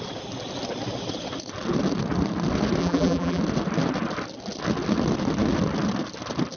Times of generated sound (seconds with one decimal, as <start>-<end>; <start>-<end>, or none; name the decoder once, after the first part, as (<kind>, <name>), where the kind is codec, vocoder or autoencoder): 2.8-3.4 (vocoder, BigVGAN v2)